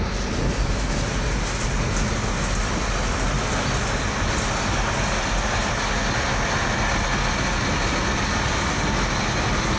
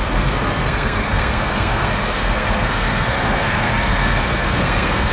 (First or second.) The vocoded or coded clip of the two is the second